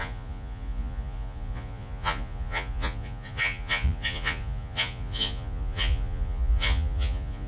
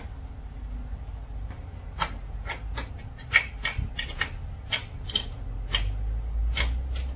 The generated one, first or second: first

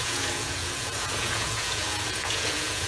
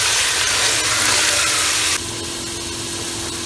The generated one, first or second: first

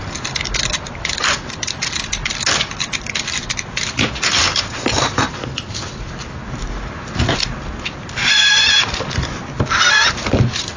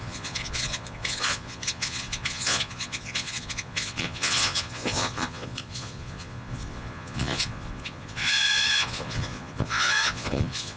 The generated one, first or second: second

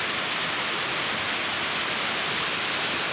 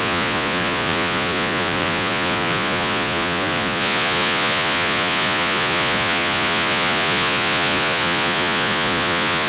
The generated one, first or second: second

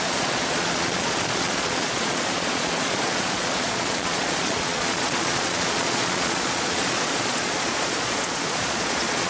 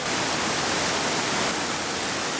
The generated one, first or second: first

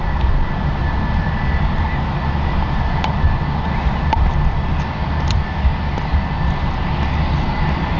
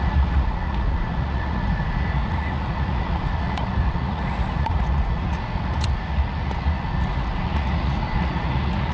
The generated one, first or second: second